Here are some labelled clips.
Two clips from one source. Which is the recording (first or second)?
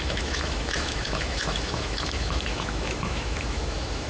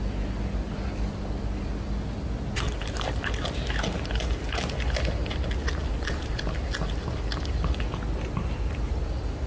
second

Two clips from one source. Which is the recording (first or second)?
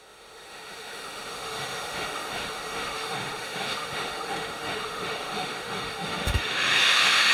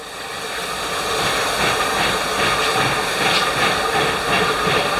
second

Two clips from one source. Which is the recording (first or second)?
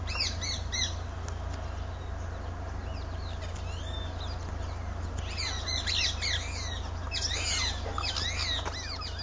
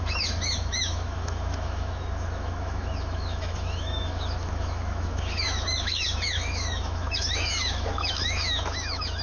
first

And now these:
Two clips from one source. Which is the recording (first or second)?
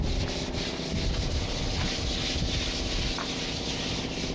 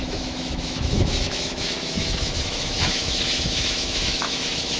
first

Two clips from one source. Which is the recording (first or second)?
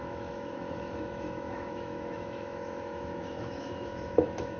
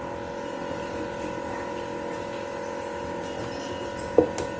second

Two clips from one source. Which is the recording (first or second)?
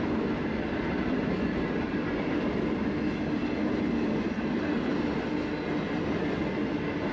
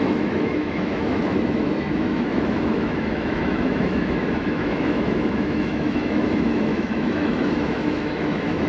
first